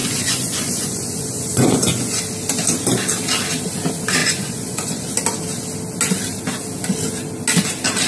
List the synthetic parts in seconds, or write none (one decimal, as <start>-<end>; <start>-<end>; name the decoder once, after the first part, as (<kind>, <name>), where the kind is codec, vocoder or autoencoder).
0.0-2.2 (vocoder, Vocos); 4.2-5.1